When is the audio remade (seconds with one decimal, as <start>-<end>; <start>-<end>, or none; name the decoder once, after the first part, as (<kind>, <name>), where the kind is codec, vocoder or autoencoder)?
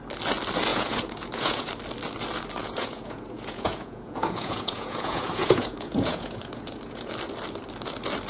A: 0.7-1.7 (vocoder, Vocos); 2.6-7.1